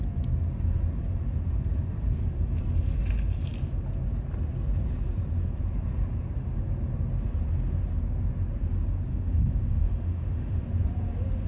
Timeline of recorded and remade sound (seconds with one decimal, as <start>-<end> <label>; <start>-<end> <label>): 0.0-9.1 recorded; 9.1-10.6 remade; 10.6-11.5 recorded